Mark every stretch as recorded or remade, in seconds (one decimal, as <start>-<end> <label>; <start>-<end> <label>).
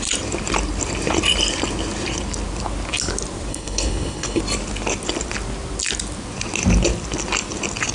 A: 0.0-3.5 recorded; 3.5-4.4 remade; 4.4-7.9 recorded